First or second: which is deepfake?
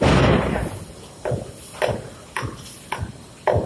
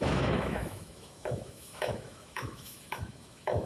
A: second